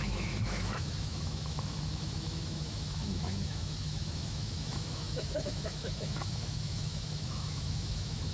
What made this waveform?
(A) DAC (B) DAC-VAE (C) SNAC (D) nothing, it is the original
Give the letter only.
B